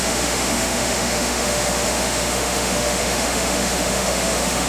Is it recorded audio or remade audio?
remade